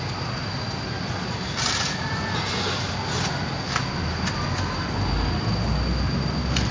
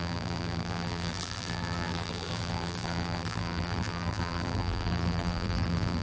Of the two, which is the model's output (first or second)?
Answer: second